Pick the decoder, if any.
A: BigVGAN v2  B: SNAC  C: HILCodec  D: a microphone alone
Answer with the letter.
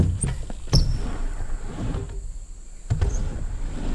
D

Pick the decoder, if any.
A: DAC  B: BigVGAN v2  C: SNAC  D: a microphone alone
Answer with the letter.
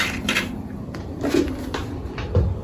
D